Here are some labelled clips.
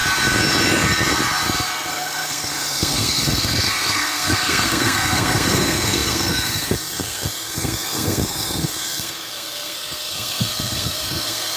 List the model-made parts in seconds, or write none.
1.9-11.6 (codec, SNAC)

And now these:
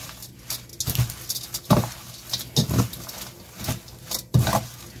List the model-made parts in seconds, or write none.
none

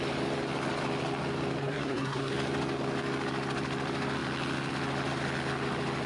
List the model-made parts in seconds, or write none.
1.6-2.3 (codec, SNAC)